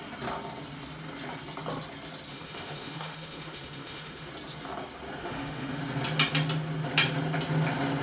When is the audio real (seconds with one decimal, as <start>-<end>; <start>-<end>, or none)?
0.0-2.3; 4.3-5.2; 5.8-8.0